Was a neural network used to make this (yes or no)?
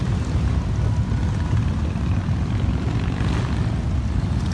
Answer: no